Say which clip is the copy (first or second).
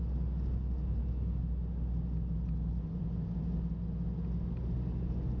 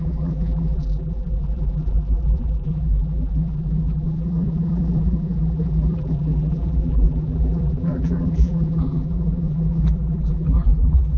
second